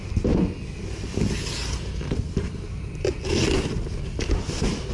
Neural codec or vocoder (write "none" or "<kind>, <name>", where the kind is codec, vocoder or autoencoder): none